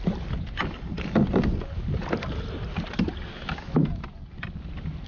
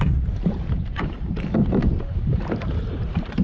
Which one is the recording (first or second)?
first